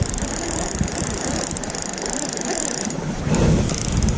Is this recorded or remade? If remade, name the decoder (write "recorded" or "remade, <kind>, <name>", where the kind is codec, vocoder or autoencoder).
recorded